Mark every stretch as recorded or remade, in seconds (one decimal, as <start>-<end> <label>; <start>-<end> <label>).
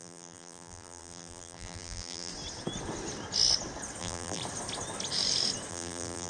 0.0-2.3 remade; 2.3-4.0 recorded; 4.0-4.4 remade; 4.4-5.7 recorded; 5.7-6.3 remade